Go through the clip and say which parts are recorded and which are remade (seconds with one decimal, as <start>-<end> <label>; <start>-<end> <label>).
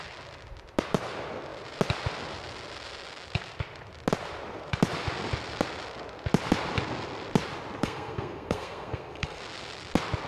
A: 0.0-7.8 recorded; 7.8-9.4 remade; 9.4-10.3 recorded